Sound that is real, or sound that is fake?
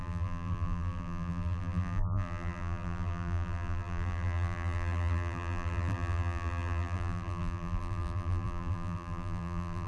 fake